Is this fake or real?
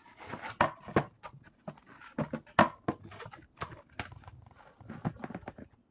real